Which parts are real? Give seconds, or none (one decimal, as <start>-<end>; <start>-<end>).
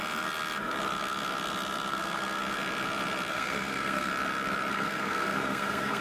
0.0-1.9; 2.4-3.3; 4.1-4.7